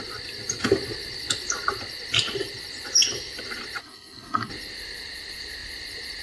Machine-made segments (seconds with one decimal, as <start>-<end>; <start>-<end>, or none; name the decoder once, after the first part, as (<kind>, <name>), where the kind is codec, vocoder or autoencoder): 3.8-4.5 (codec, SNAC)